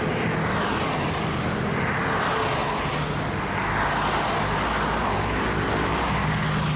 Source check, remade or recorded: recorded